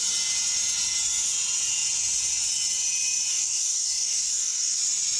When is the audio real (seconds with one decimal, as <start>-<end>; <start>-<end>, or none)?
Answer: 0.0-3.3; 4.8-5.2